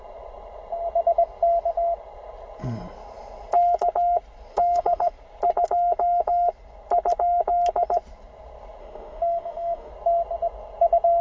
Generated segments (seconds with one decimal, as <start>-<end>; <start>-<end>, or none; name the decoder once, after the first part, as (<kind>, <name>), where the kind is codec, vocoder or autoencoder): 4.5-5.1 (autoencoder, DAC-VAE); 8.8-9.9